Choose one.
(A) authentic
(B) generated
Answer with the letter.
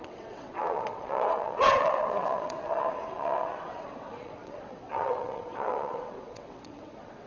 B